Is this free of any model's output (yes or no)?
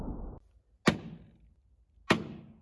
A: yes